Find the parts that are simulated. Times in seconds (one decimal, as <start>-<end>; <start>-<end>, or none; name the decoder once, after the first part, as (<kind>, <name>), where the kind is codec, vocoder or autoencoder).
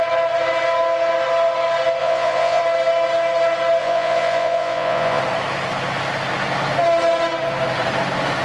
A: 2.0-2.6 (vocoder, Vocos); 3.8-5.2